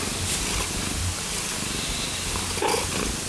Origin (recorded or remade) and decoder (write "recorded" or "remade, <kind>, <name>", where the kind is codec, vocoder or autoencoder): recorded